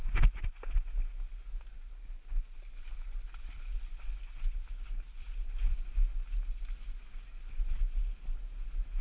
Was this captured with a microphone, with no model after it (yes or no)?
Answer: yes